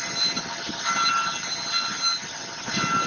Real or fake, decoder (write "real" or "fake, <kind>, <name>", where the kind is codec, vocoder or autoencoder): real